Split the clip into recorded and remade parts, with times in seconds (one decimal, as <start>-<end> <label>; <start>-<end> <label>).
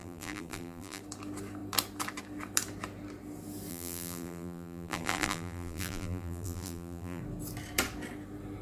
0.0-1.0 remade; 1.0-3.7 recorded; 3.7-7.2 remade; 7.2-8.6 recorded